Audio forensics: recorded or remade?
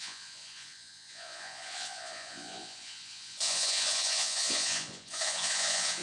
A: remade